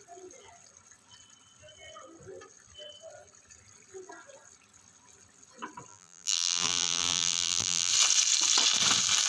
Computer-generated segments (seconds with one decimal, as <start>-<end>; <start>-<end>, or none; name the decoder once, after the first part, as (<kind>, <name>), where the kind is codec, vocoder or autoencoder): 5.9-7.9 (vocoder, BigVGAN v2)